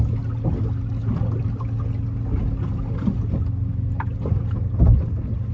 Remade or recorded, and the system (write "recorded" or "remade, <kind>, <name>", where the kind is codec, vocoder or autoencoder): recorded